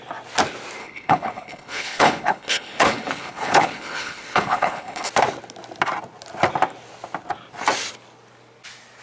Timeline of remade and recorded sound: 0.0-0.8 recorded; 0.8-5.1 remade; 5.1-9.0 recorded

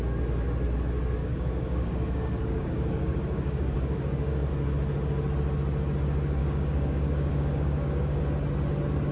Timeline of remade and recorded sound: 0.0-1.2 recorded; 1.2-4.5 remade; 4.5-6.4 recorded; 6.4-8.2 remade; 8.2-9.1 recorded

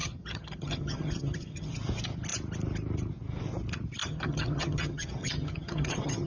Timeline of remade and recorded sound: 0.0-1.7 remade; 1.7-4.0 recorded; 4.0-6.3 remade

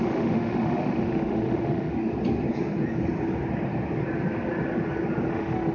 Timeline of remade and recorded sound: 0.0-1.9 remade; 1.9-5.3 recorded; 5.3-5.7 remade

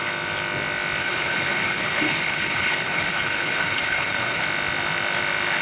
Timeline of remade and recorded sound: 0.0-1.0 recorded; 1.0-4.4 remade; 4.4-5.6 recorded

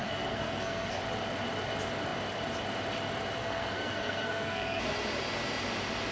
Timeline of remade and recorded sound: 0.0-1.0 remade; 1.0-3.4 recorded; 3.4-4.8 remade; 4.8-6.1 recorded

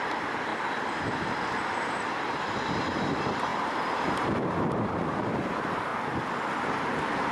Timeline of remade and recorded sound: 0.0-0.5 remade; 0.5-1.8 recorded; 1.8-5.9 remade; 5.9-6.8 recorded; 6.8-7.3 remade